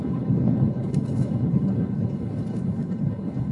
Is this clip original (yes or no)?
no